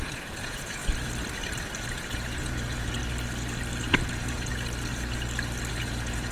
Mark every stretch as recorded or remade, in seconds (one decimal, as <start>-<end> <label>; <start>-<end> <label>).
0.0-0.8 remade; 0.8-1.8 recorded; 1.8-3.0 remade; 3.0-3.8 recorded; 3.8-4.5 remade; 4.5-5.7 recorded; 5.7-6.3 remade